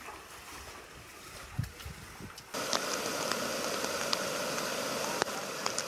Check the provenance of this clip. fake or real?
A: real